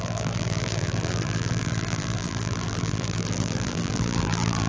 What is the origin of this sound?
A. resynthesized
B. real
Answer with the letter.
A